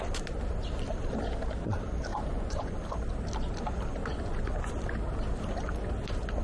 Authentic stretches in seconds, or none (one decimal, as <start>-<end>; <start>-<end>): 0.0-2.1; 2.7-4.0; 4.7-6.4